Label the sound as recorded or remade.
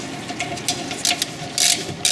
recorded